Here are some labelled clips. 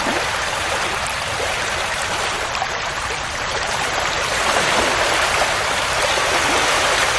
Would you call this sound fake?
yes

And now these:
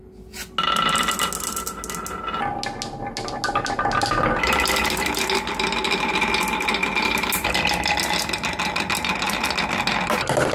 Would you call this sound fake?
no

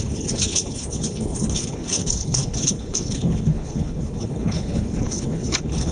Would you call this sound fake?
yes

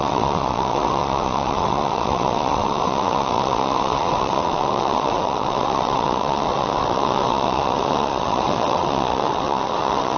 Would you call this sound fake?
yes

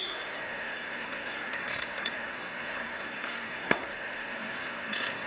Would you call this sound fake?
yes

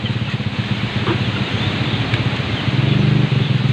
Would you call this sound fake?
no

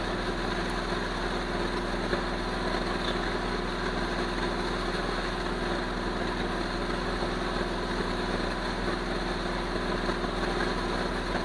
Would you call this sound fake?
no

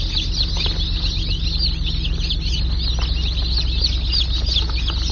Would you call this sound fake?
no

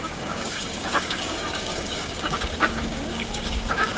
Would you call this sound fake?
yes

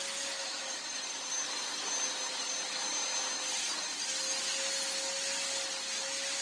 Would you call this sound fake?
no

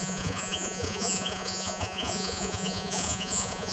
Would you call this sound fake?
yes